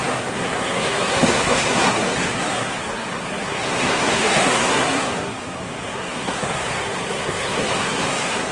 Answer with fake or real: fake